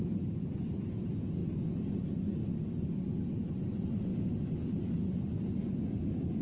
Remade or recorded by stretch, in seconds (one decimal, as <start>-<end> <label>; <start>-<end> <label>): 0.0-6.4 recorded